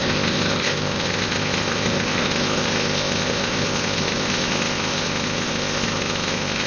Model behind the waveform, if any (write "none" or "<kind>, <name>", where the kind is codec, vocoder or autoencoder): codec, ZipCodec